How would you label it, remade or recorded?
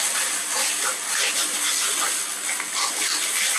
recorded